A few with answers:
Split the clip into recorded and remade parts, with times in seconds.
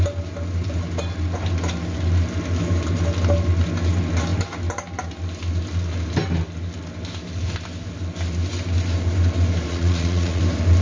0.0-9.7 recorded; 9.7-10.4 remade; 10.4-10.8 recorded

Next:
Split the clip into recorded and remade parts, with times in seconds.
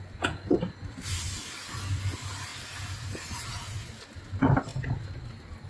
0.0-5.7 recorded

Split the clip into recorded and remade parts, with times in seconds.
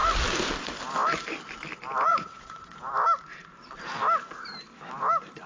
0.0-2.1 recorded; 2.1-2.9 remade; 2.9-5.5 recorded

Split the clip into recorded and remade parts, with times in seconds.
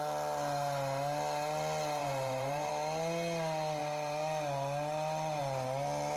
0.0-2.0 recorded; 2.0-2.7 remade; 2.7-6.2 recorded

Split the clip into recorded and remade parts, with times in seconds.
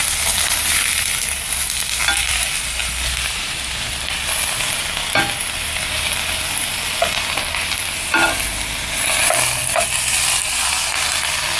0.0-11.6 recorded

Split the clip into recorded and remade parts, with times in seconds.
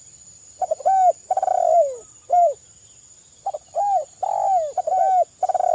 0.0-5.7 recorded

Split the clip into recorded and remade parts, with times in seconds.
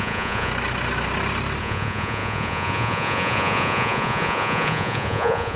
0.0-0.5 remade; 0.5-1.6 recorded; 1.6-5.6 remade